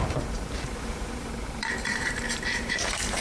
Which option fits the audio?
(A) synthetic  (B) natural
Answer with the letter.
A